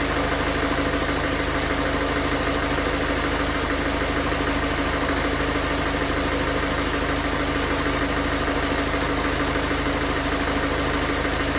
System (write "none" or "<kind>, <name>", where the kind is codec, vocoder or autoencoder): none